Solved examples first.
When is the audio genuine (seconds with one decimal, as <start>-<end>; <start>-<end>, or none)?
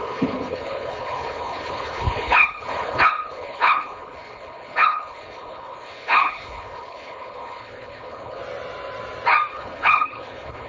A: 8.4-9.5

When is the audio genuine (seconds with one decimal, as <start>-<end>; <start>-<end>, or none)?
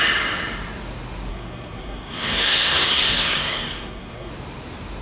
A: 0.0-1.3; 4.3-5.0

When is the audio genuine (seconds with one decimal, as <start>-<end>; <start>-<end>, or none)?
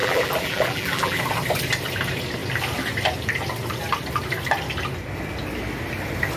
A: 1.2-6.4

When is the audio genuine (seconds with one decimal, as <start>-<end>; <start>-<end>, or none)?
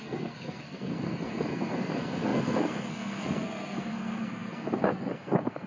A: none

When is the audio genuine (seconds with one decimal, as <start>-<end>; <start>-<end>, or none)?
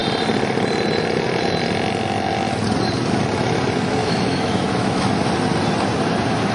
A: 0.0-4.0; 5.1-6.5